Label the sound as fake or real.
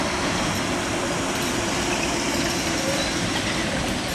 fake